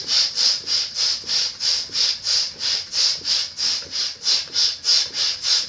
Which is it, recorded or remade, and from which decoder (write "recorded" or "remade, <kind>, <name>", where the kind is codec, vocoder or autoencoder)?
recorded